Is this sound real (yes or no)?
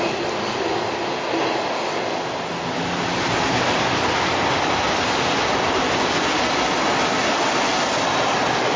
yes